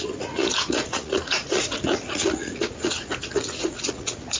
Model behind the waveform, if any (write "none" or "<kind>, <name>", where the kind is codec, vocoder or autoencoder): vocoder, Vocos